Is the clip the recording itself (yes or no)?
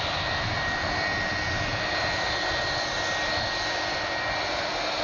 yes